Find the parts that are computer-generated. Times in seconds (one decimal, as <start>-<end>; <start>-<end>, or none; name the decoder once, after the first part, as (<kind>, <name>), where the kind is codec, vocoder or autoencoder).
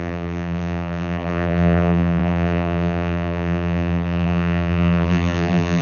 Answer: 0.0-5.8 (vocoder, BigVGAN v2)